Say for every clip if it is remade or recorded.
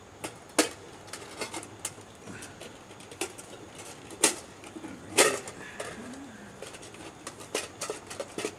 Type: recorded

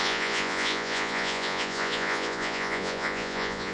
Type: remade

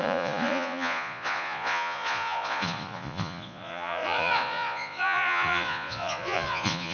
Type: remade